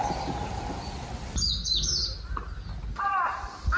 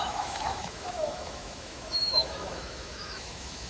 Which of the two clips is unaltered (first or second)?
first